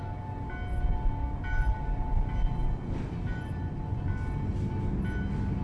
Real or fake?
real